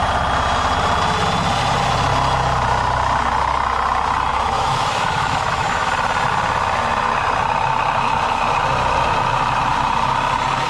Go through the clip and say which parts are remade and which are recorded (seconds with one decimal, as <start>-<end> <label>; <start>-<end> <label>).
0.0-4.3 recorded; 4.3-5.9 remade; 5.9-10.7 recorded